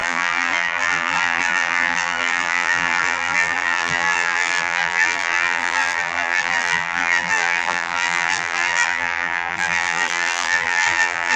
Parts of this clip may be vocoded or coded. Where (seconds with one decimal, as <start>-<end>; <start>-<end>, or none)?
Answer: 0.0-11.4